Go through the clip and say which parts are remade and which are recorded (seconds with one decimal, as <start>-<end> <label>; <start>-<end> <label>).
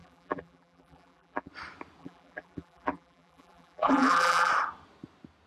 0.0-1.5 remade; 1.5-2.0 recorded; 2.0-4.5 remade; 4.5-5.5 recorded